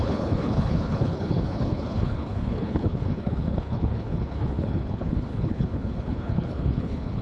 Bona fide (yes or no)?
no